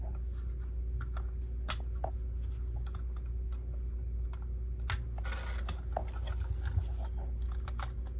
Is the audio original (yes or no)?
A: yes